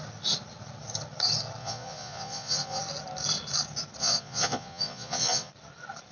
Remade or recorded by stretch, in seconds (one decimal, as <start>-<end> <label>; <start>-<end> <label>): 0.0-1.6 recorded; 1.6-2.8 remade; 2.8-4.0 recorded; 4.0-5.5 remade; 5.5-6.1 recorded